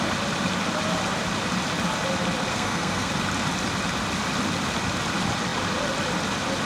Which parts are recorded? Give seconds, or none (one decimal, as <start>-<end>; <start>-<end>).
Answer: 0.0-2.5; 3.1-6.7